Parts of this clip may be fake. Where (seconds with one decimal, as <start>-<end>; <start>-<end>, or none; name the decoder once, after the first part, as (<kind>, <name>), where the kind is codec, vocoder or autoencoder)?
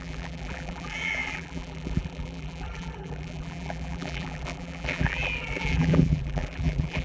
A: 0.0-7.0 (vocoder, BigVGAN v2)